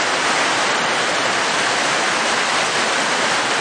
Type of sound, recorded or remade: recorded